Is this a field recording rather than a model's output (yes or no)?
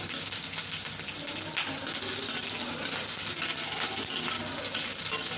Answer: yes